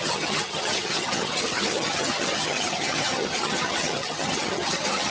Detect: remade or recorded remade